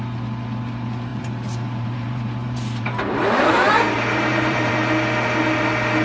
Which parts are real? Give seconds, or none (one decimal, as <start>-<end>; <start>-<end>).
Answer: 0.0-1.1; 4.7-6.0